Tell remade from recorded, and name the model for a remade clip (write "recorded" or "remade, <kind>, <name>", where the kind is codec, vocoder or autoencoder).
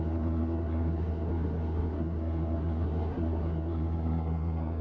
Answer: remade, codec, SNAC